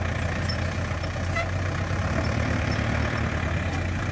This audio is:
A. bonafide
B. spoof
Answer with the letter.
A